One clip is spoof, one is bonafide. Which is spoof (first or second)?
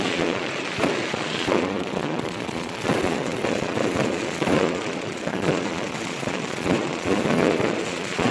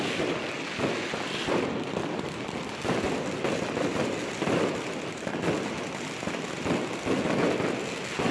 first